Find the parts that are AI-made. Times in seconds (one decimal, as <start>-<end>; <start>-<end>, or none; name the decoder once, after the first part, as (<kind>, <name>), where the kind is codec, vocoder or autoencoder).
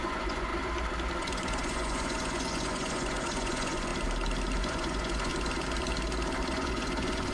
0.0-0.5 (vocoder, Vocos); 1.2-3.9; 4.6-5.3; 6.5-7.3